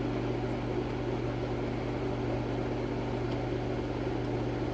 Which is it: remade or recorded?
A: recorded